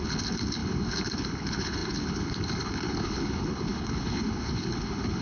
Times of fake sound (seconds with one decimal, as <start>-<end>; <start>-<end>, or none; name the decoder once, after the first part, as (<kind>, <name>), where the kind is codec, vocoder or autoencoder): 0.0-5.2 (codec, HILCodec)